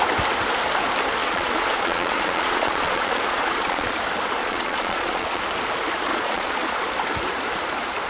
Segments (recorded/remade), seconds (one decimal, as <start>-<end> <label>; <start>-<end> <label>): 0.0-1.2 recorded; 1.2-3.9 remade; 3.9-4.4 recorded; 4.4-5.4 remade; 5.4-6.1 recorded; 6.1-6.9 remade; 6.9-8.1 recorded